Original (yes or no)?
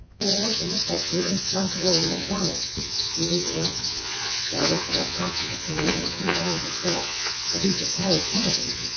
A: no